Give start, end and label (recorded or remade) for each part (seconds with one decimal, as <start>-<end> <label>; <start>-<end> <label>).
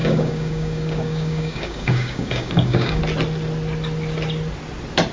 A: 0.0-3.0 remade; 3.0-5.1 recorded